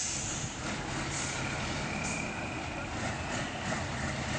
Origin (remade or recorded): recorded